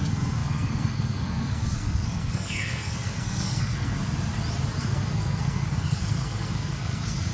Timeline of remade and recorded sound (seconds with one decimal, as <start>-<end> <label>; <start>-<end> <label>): 0.0-4.0 remade; 4.0-4.8 recorded; 4.8-7.3 remade